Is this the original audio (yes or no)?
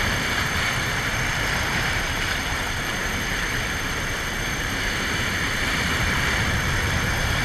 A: no